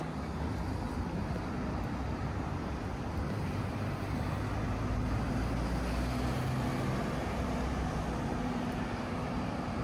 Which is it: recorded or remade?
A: recorded